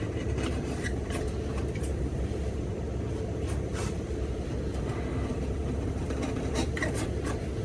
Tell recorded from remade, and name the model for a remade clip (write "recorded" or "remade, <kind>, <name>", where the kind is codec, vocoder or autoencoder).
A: recorded